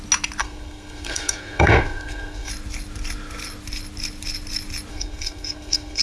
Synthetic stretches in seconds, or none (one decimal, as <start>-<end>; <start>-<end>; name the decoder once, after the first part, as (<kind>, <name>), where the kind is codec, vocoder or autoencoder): 0.4-2.5 (codec, SNAC); 4.9-6.0